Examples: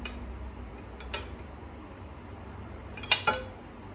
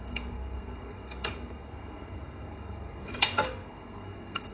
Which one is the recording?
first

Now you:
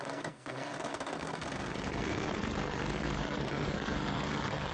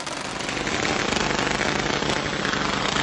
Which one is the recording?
second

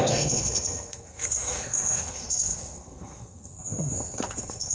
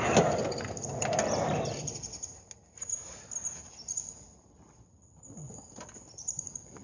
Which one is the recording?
second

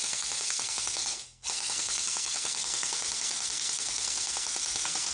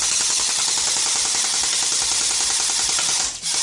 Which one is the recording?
second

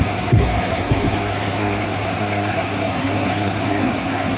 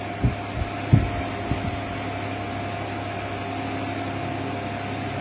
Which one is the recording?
second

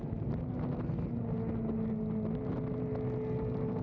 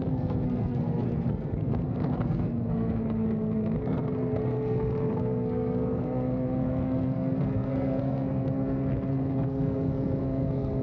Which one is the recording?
first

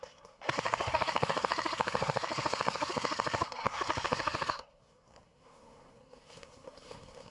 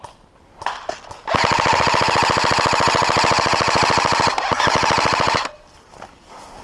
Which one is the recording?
second